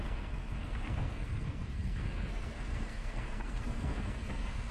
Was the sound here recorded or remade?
remade